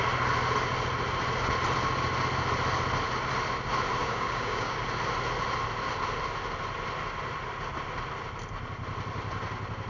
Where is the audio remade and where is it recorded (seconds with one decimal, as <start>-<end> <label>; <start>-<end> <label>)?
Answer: 0.0-4.0 recorded; 4.0-4.8 remade; 4.8-9.9 recorded